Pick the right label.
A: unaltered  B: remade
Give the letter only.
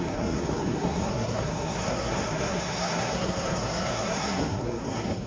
B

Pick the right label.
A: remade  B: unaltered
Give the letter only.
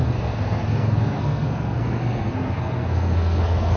A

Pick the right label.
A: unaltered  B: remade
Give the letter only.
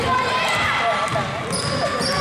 A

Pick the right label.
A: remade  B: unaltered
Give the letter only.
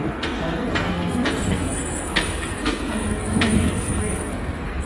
A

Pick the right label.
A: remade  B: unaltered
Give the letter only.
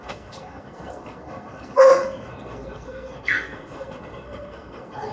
A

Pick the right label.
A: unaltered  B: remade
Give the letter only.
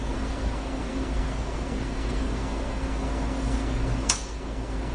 B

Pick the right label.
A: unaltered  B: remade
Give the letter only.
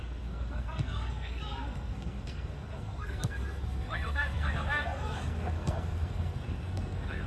B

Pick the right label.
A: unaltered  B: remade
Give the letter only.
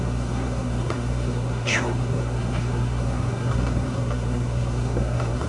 B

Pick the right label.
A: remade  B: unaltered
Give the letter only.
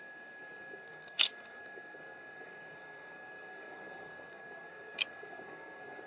A